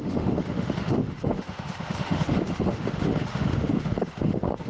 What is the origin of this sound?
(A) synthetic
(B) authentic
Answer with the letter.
A